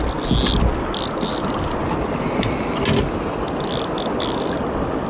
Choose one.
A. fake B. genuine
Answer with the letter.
B